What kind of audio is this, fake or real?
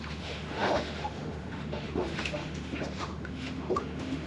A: fake